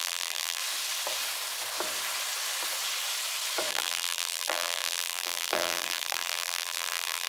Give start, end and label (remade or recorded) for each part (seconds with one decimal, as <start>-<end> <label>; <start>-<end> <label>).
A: 0.0-0.6 remade; 0.6-3.7 recorded; 3.7-7.3 remade